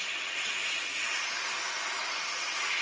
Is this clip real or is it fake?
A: real